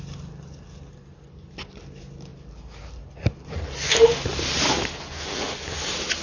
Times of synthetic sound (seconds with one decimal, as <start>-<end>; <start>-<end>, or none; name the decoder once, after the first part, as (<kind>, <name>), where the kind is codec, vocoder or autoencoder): 2.3-3.0 (vocoder, BigVGAN v2)